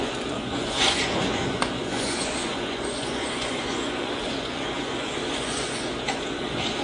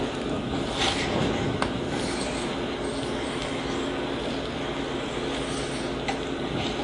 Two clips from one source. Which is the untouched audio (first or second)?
second